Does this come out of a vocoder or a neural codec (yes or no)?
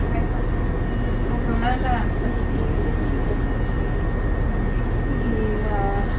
no